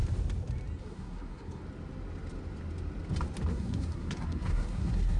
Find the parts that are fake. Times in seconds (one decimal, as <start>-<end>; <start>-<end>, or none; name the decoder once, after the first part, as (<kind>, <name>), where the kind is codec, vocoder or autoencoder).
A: 0.8-1.6 (codec, SNAC); 3.5-5.2

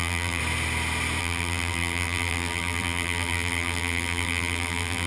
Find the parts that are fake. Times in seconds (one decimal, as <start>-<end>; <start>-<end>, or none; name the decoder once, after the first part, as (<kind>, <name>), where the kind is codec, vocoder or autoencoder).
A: 0.0-0.4 (vocoder, BigVGAN v2); 1.2-5.1

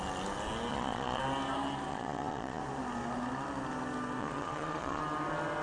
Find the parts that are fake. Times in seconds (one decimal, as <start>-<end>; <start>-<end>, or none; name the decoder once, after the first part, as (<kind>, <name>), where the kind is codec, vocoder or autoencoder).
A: 0.7-1.2 (vocoder, Vocos); 1.9-2.6; 4.2-5.0